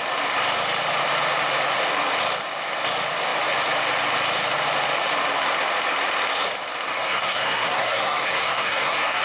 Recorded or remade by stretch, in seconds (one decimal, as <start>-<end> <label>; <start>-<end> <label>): 0.0-6.9 recorded; 6.9-9.2 remade